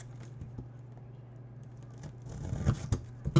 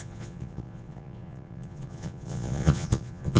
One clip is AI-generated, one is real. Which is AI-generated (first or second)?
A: second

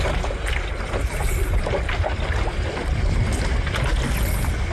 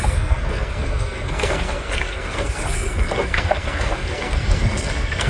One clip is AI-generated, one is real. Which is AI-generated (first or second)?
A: second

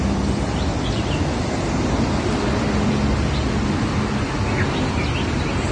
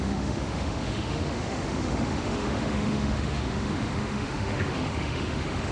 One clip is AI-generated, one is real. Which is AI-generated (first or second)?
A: second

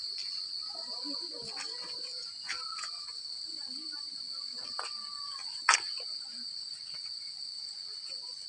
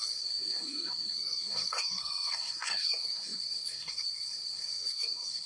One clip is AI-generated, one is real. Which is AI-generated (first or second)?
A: second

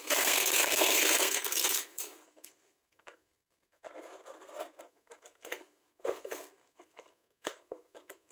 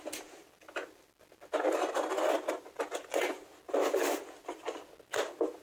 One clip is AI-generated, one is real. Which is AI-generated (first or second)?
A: first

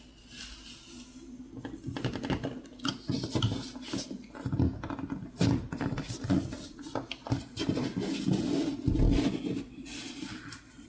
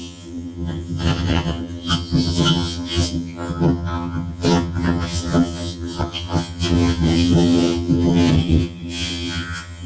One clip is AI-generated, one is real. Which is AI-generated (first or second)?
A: second